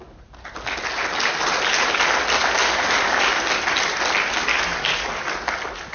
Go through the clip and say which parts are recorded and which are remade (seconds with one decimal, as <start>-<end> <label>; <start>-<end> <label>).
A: 0.0-2.6 recorded; 2.6-3.4 remade; 3.4-4.5 recorded; 4.5-5.1 remade; 5.1-5.9 recorded